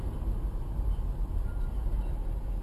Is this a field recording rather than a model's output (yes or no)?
yes